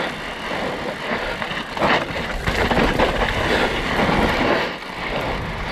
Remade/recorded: recorded